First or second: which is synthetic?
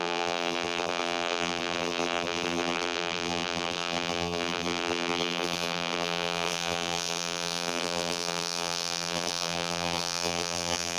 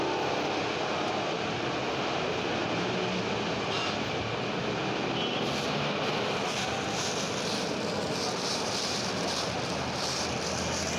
first